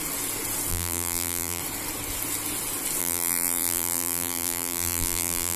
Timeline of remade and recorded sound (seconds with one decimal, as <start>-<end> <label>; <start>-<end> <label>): 0.0-0.7 recorded; 0.7-1.6 remade; 1.6-3.0 recorded; 3.0-5.6 remade